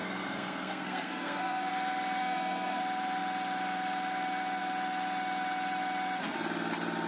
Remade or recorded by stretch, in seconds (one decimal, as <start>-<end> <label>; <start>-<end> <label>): 0.0-1.7 remade; 1.7-2.2 recorded; 2.2-2.8 remade; 2.8-7.1 recorded